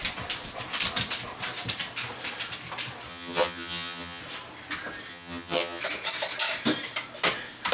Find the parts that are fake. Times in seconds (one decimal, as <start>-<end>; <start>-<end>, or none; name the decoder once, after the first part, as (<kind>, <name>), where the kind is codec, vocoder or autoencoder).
3.1-4.2 (vocoder, HiFi-GAN); 5.1-5.8